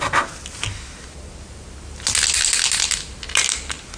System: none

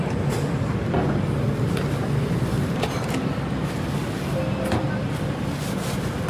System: none